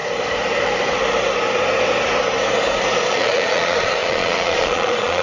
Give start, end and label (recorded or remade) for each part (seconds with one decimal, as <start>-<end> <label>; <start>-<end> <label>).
0.0-3.1 recorded; 3.1-5.2 remade